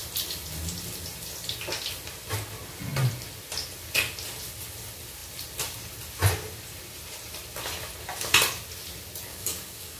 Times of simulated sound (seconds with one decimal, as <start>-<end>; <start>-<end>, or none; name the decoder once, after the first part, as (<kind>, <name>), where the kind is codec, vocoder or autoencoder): 9.3-10.0 (codec, DAC)